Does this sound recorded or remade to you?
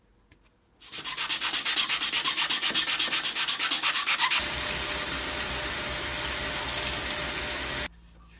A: recorded